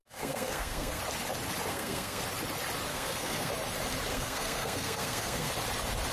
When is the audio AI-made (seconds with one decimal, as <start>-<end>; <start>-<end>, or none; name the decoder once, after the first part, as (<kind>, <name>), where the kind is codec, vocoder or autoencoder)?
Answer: 0.0-1.0 (codec, SNAC); 1.7-2.2; 2.9-3.5; 4.1-5.5